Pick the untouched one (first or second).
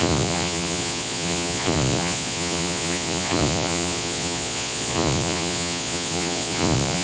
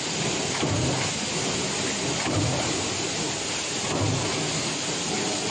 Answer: second